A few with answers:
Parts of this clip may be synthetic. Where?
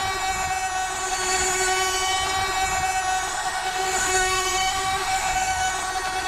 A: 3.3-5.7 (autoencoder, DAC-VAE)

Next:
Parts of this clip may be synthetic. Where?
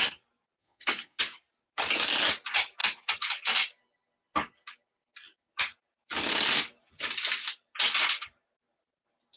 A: 0.6-1.2 (codec, SNAC)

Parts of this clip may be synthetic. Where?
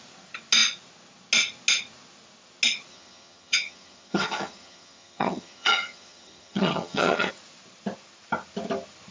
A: 2.9-7.3 (vocoder, HiFi-GAN)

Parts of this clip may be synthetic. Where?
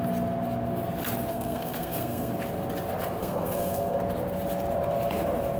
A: 1.3-2.3 (codec, SNAC); 3.2-4.0